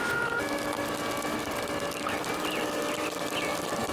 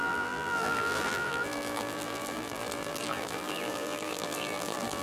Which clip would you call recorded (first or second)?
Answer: first